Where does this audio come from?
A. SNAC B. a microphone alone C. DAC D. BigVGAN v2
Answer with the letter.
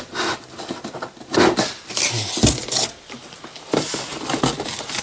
B